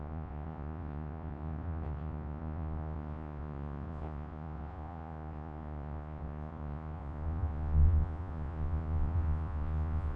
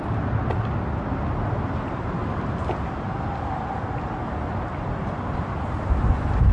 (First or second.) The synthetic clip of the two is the first